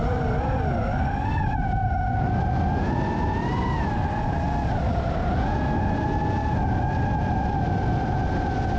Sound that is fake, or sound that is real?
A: real